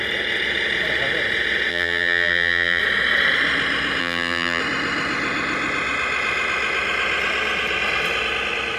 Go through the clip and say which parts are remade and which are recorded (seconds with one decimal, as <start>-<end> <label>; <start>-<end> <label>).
0.0-1.7 recorded; 1.7-2.8 remade; 2.8-4.0 recorded; 4.0-4.6 remade; 4.6-8.8 recorded